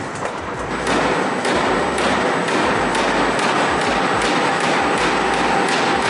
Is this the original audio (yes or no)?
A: yes